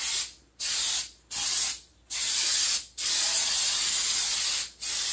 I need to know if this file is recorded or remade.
recorded